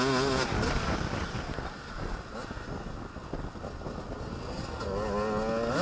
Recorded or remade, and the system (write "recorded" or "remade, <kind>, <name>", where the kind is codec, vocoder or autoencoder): recorded